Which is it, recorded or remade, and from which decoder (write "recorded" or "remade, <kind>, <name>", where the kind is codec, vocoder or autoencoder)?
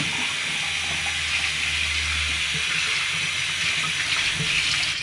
recorded